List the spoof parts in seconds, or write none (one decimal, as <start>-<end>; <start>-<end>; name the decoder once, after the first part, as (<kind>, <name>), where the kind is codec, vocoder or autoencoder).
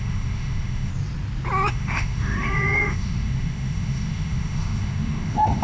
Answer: 0.0-0.9 (autoencoder, DAC-VAE); 1.7-5.6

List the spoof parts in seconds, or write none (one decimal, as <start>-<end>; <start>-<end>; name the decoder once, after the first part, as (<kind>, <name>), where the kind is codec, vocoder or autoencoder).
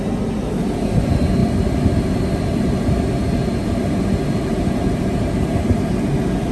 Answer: none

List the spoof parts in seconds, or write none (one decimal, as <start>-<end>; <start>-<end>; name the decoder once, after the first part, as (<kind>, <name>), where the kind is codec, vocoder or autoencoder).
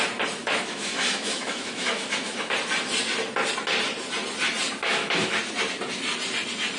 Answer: 0.4-2.5 (autoencoder, DAC-VAE); 4.8-5.4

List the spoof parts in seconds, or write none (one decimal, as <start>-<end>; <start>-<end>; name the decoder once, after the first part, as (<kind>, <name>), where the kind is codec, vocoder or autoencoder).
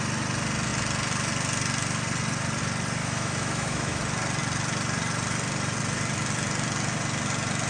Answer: 3.0-4.0 (autoencoder, DAC-VAE)